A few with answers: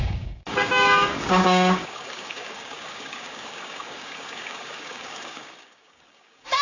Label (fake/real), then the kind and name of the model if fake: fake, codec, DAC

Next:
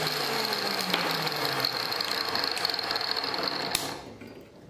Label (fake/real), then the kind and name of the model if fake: real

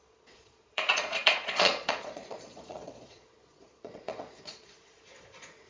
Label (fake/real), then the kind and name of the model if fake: fake, vocoder, Vocos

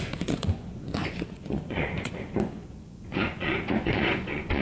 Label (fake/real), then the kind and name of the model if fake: fake, vocoder, Vocos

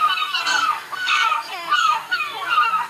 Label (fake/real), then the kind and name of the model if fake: fake, codec, SNAC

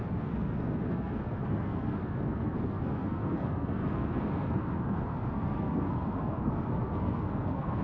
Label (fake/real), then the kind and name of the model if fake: fake, codec, SNAC